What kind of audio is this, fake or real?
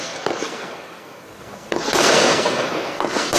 fake